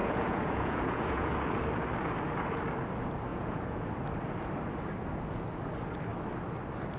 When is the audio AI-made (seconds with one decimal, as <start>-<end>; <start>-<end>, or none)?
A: 0.0-1.3; 3.3-3.9